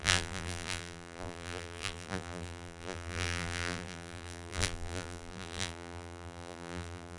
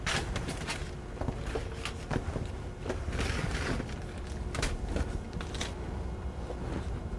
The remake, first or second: first